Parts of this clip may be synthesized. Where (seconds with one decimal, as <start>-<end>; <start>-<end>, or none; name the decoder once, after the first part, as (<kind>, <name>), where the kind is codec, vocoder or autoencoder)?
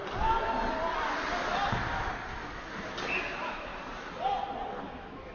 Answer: 3.2-3.7 (autoencoder, DAC-VAE); 4.8-5.3